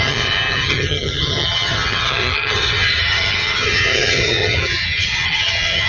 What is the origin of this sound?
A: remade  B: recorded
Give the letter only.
A